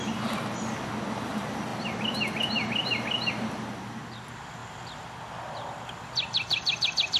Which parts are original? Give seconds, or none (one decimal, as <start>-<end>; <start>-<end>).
0.0-7.2